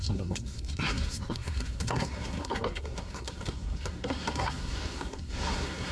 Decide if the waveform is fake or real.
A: fake